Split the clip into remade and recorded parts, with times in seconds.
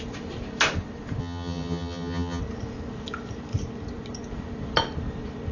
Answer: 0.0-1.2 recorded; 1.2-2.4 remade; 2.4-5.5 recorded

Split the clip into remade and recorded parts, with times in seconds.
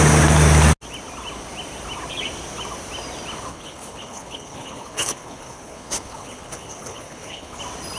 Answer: 0.0-3.5 recorded; 3.5-7.6 remade; 7.6-8.0 recorded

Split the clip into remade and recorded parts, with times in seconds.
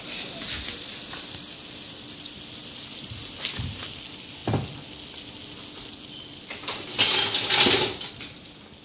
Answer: 0.0-8.8 recorded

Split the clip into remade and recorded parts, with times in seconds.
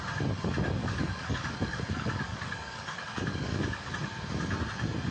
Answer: 0.0-0.8 recorded; 0.8-3.9 remade; 3.9-5.1 recorded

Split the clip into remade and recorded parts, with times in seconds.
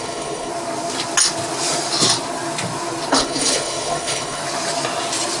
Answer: 0.0-0.5 remade; 0.5-3.1 recorded; 3.1-4.4 remade; 4.4-5.4 recorded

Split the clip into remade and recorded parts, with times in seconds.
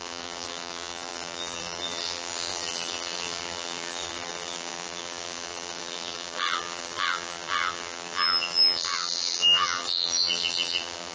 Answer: 0.0-11.1 remade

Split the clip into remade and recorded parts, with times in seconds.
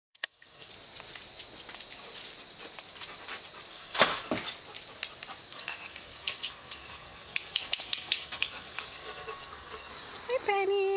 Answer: 0.0-0.7 remade; 0.7-3.7 recorded; 3.7-4.3 remade; 4.3-5.5 recorded; 5.5-9.9 remade; 9.9-11.0 recorded